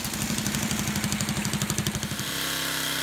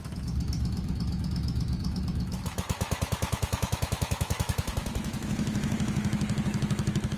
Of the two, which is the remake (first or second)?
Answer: second